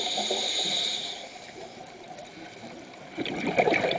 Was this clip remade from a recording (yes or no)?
yes